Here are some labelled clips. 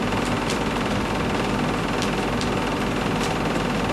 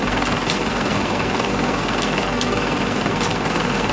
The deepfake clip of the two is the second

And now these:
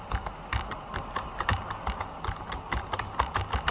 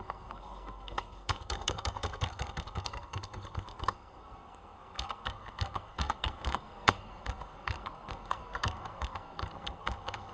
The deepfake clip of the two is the second